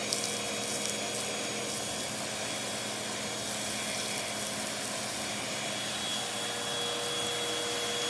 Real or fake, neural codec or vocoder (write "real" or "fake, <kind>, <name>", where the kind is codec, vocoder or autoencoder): real